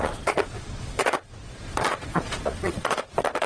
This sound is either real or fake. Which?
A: fake